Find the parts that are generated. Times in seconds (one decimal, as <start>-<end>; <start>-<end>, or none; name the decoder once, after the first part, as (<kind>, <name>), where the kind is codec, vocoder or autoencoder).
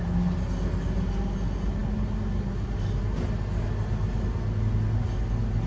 none